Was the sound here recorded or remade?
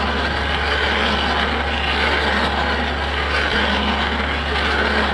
recorded